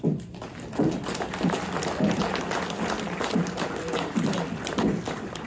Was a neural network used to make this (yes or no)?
no